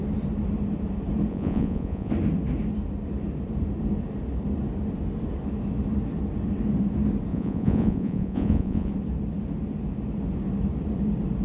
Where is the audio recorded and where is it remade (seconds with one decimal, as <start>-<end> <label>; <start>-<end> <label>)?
0.0-1.3 recorded; 1.3-2.1 remade; 2.1-7.3 recorded; 7.3-8.9 remade; 8.9-11.4 recorded